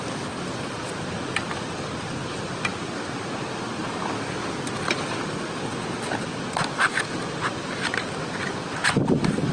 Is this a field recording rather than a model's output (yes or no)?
yes